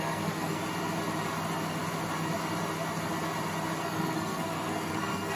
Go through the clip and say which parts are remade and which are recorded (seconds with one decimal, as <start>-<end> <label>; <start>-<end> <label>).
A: 0.0-0.6 remade; 0.6-3.8 recorded; 3.8-5.4 remade

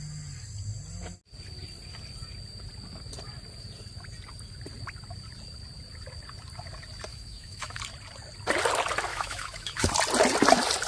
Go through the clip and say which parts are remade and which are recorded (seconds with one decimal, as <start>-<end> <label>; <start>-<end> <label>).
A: 0.0-7.1 recorded; 7.1-7.8 remade; 7.8-9.1 recorded; 9.1-9.9 remade; 9.9-10.9 recorded

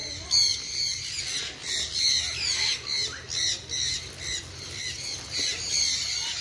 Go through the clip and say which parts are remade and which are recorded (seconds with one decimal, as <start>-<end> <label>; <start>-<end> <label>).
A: 0.0-1.0 remade; 1.0-1.6 recorded; 1.6-2.2 remade; 2.2-6.4 recorded

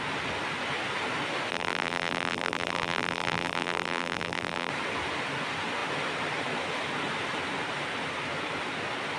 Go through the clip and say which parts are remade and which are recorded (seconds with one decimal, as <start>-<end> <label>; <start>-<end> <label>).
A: 0.0-1.5 recorded; 1.5-4.7 remade; 4.7-9.2 recorded

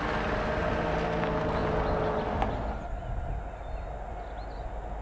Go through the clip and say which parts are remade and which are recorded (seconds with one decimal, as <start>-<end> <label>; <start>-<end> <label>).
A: 0.0-5.0 recorded

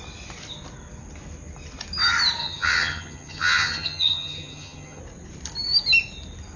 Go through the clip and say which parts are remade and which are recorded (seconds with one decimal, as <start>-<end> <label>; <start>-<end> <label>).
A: 0.0-2.4 recorded; 2.4-5.0 remade; 5.0-6.6 recorded

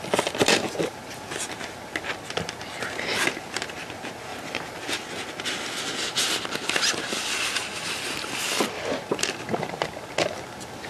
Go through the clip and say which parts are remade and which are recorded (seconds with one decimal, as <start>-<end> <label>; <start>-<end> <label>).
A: 0.0-4.3 recorded; 4.3-4.9 remade; 4.9-10.9 recorded